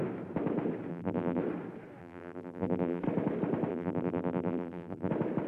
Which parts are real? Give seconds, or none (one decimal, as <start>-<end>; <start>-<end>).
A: 0.0-0.9; 1.4-2.0; 3.0-3.7; 5.1-5.5